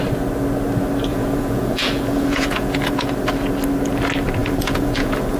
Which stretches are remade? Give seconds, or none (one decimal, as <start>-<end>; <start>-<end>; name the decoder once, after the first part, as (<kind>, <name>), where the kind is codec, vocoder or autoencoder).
1.1-3.1 (vocoder, Vocos); 4.4-5.4